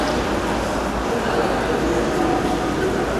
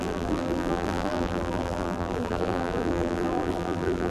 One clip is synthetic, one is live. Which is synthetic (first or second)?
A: second